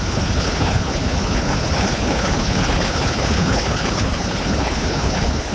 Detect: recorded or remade remade